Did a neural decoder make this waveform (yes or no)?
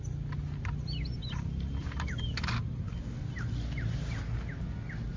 no